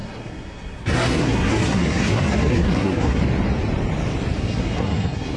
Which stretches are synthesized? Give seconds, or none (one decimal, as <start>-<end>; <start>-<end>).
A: 0.0-3.2; 4.4-5.4